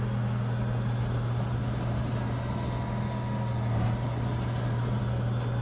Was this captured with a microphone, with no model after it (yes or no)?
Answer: yes